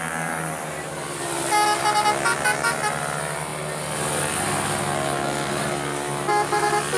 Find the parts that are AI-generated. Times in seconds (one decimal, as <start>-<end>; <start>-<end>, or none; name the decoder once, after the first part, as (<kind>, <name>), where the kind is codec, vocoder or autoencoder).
none